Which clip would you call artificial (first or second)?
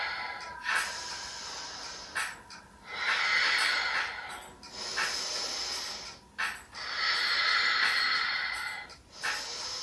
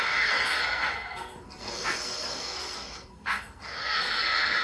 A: second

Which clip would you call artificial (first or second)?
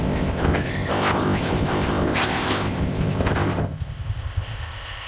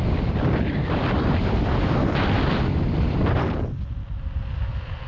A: first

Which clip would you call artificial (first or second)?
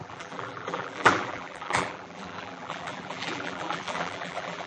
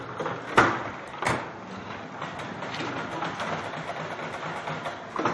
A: first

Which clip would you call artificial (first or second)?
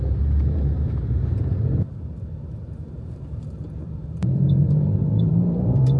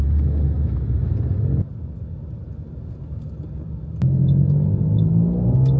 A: first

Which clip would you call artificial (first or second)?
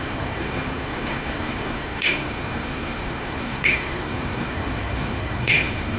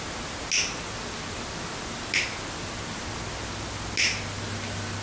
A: first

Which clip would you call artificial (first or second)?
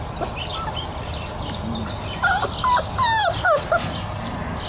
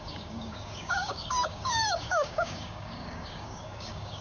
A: second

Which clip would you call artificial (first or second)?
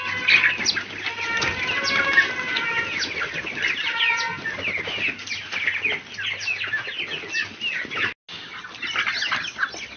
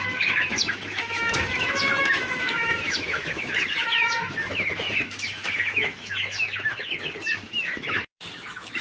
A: second